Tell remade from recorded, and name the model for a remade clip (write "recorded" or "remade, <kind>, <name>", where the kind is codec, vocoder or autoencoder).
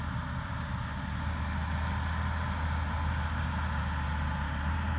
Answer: recorded